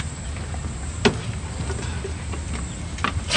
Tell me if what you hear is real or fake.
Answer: real